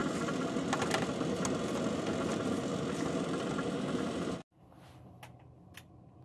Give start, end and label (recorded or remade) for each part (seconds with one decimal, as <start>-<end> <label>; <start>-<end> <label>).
0.0-1.9 remade; 1.9-2.7 recorded; 2.7-5.0 remade; 5.0-6.2 recorded